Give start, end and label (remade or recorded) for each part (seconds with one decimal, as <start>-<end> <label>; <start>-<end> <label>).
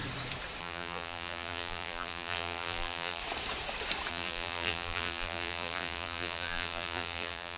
0.0-0.6 recorded; 0.6-3.2 remade; 3.2-4.1 recorded; 4.1-7.6 remade